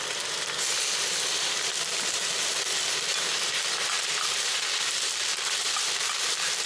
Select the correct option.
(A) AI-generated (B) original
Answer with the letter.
A